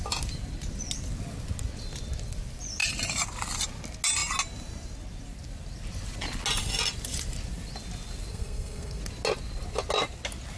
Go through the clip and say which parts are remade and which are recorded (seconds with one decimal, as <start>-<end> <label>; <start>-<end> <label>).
0.0-8.3 recorded; 8.3-9.0 remade; 9.0-10.6 recorded